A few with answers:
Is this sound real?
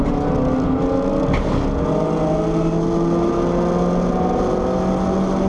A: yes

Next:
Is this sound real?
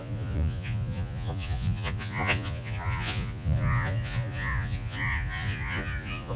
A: no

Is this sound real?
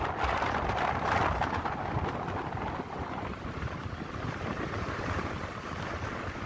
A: yes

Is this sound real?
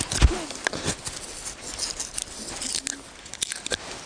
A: yes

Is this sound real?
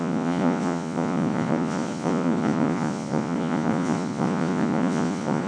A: no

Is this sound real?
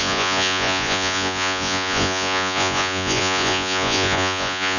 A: no